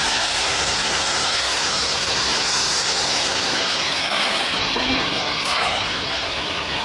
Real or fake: fake